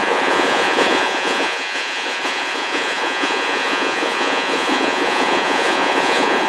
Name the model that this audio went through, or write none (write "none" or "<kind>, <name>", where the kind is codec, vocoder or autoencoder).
vocoder, Vocos